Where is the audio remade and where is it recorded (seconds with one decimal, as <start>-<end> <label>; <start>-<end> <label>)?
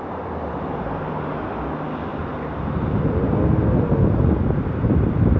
0.0-2.1 recorded; 2.1-2.8 remade; 2.8-5.4 recorded